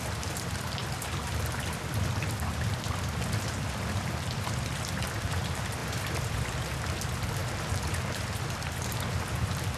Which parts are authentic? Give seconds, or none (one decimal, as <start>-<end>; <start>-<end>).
0.0-5.8; 6.4-9.8